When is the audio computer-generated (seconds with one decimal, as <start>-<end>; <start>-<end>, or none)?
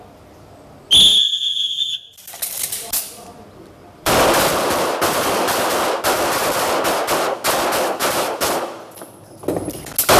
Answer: 1.1-5.7; 8.0-9.6